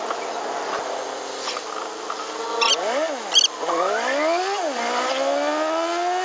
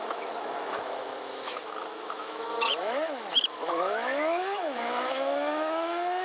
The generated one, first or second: second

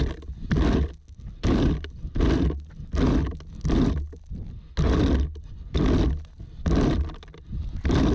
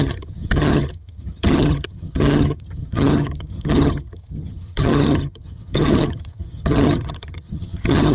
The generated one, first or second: second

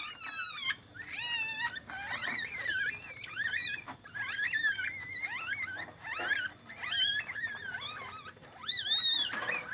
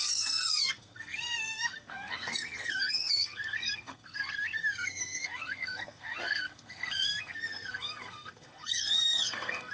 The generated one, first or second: second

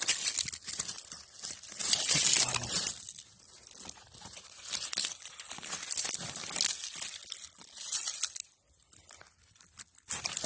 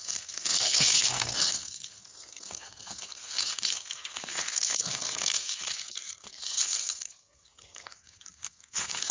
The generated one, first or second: second